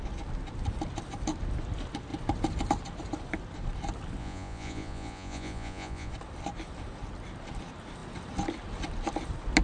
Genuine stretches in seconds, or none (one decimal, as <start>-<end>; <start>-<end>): 0.0-4.2; 6.1-9.6